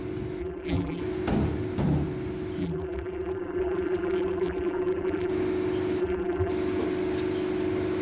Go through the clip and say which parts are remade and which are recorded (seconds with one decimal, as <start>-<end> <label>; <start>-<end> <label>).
0.0-0.4 recorded; 0.4-1.0 remade; 1.0-2.6 recorded; 2.6-5.3 remade; 5.3-6.0 recorded; 6.0-6.5 remade; 6.5-8.0 recorded